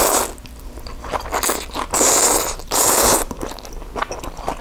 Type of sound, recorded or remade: recorded